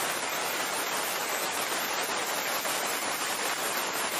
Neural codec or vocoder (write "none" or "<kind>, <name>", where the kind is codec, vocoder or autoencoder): vocoder, BigVGAN v2